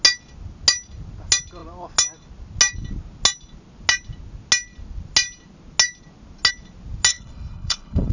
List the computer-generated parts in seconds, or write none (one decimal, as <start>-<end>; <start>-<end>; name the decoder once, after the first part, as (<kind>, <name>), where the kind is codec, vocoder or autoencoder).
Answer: 7.1-8.1 (codec, HILCodec)